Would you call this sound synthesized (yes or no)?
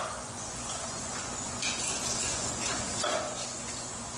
yes